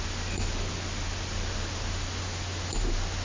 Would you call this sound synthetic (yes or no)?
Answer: no